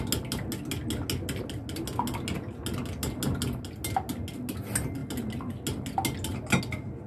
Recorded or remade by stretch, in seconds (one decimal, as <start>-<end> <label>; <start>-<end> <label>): 0.0-7.1 recorded